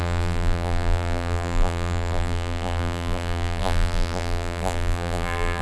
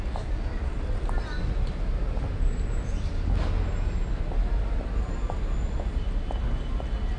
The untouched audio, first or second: second